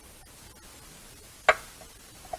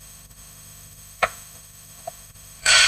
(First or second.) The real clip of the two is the first